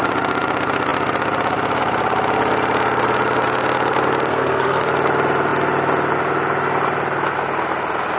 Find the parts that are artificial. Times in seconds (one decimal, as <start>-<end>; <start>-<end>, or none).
4.3-4.8